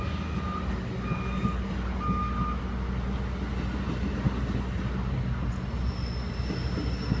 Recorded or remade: recorded